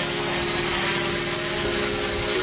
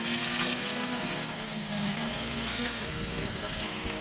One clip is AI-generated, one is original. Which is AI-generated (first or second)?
second